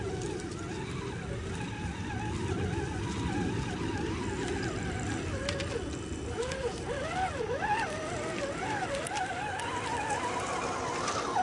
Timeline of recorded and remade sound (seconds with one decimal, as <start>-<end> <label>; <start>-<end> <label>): 0.0-11.4 recorded